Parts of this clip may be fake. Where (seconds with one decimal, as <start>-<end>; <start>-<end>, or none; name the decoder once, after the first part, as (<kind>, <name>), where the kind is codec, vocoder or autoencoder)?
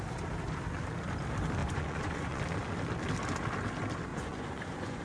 1.6-2.4 (vocoder, Vocos); 4.1-5.0